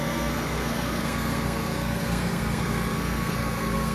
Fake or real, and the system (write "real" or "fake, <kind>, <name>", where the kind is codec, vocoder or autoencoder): fake, codec, SNAC